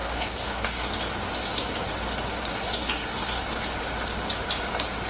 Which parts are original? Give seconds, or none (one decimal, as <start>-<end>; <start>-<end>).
0.9-1.4; 1.9-2.5; 3.4-5.1